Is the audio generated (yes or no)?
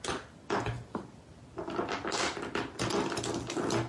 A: no